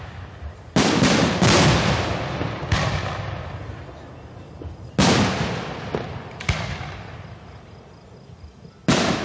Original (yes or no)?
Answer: yes